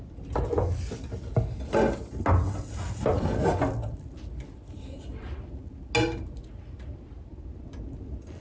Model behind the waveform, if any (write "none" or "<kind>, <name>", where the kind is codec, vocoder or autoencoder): none